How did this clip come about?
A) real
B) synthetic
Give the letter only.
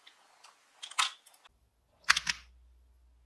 A